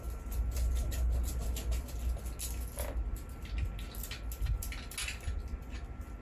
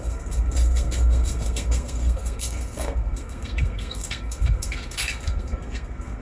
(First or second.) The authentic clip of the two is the first